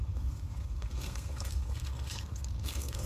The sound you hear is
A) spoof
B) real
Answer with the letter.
A